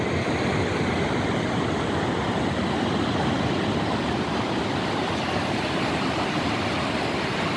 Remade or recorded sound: recorded